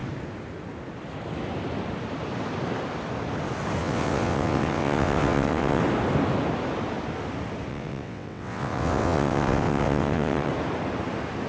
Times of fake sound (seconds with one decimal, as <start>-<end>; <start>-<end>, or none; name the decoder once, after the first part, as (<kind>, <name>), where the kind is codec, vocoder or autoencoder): 3.8-5.8 (vocoder, WaveNeXt); 7.7-10.5